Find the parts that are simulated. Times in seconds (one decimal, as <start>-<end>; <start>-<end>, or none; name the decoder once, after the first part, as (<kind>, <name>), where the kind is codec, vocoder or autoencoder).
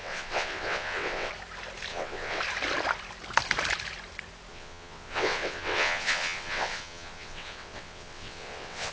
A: 0.0-1.3 (vocoder, WaveNeXt); 1.9-2.4; 4.5-8.9